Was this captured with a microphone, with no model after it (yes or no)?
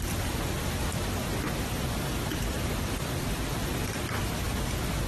yes